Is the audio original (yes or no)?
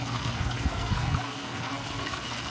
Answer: no